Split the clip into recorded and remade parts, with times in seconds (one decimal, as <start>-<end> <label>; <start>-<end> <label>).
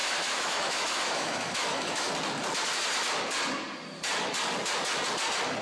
0.0-2.1 remade; 2.1-5.6 recorded